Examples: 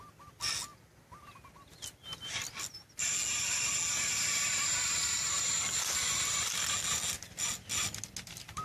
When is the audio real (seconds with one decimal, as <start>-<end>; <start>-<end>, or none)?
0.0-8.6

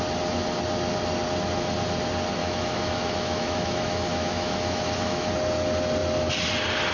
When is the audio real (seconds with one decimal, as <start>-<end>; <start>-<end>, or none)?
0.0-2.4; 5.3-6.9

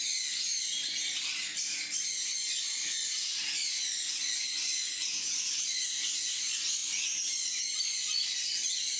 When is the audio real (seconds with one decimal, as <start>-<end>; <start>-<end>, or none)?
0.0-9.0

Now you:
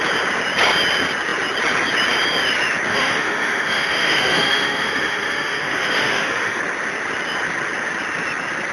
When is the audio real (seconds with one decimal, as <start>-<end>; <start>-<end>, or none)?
0.0-2.9; 6.6-8.7

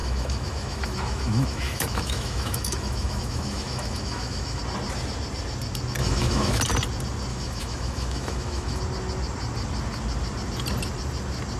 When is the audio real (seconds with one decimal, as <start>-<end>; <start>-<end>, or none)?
4.6-6.0; 6.6-7.3; 8.8-11.6